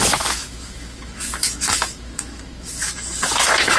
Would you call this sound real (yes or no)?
no